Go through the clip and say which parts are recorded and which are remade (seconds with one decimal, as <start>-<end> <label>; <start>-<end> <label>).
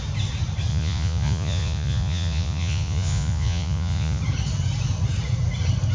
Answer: 0.0-0.7 recorded; 0.7-4.2 remade; 4.2-5.9 recorded